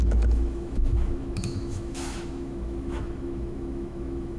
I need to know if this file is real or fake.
fake